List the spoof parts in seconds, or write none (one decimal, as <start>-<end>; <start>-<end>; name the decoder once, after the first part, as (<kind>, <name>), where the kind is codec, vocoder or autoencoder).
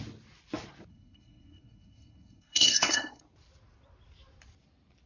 0.9-3.2 (codec, SNAC)